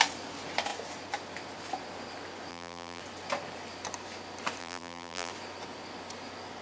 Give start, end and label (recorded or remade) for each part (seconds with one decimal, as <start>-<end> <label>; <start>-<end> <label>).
0.0-2.5 recorded; 2.5-3.0 remade; 3.0-4.6 recorded; 4.6-5.3 remade; 5.3-6.6 recorded